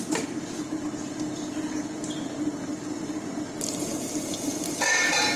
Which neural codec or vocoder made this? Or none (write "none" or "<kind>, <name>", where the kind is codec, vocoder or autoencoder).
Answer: none